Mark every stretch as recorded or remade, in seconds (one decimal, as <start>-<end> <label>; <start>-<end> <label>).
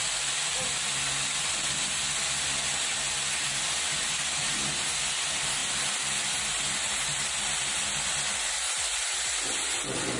0.0-10.2 recorded